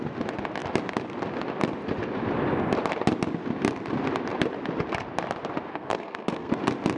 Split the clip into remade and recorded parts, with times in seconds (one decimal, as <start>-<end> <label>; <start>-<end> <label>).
0.0-5.7 recorded; 5.7-6.5 remade; 6.5-7.0 recorded